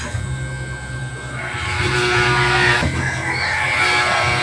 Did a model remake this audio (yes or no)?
no